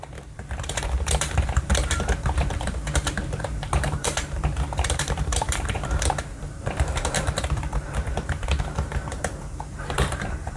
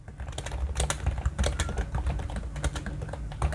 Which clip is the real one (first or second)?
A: second